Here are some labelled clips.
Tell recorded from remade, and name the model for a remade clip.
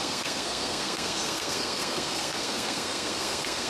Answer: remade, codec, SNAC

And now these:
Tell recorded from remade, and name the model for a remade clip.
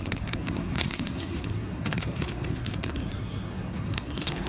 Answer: remade, codec, SNAC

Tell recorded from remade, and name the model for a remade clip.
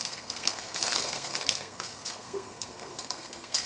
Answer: remade, codec, SNAC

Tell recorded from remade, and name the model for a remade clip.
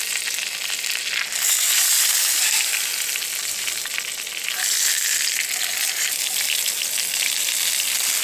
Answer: recorded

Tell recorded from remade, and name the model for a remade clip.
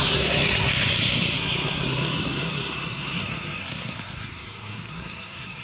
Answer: remade, codec, SNAC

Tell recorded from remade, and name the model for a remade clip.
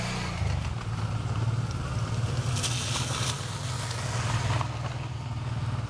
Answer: recorded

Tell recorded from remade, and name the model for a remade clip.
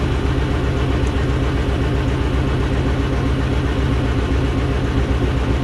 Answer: recorded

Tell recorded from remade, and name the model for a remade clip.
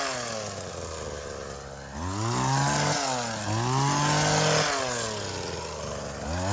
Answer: recorded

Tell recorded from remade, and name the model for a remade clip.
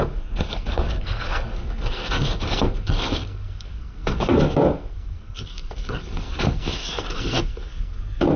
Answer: remade, codec, SNAC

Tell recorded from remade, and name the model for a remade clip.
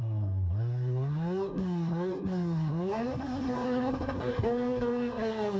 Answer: remade, codec, SNAC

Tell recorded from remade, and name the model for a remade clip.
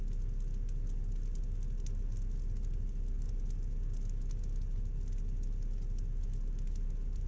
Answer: recorded